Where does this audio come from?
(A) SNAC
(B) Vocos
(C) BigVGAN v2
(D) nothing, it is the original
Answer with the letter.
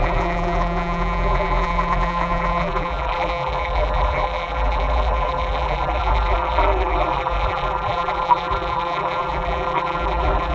C